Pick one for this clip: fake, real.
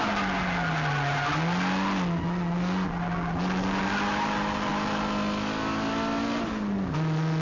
real